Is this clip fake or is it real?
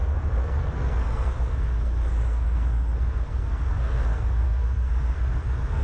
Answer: fake